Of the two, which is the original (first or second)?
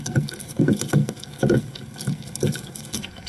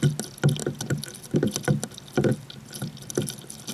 second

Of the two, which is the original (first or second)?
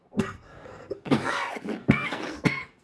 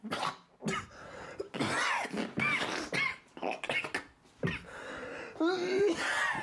second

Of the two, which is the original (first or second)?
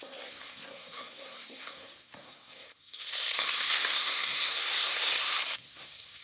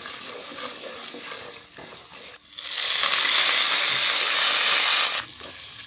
second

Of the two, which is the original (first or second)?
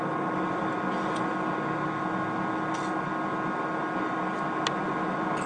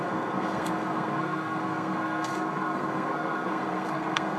first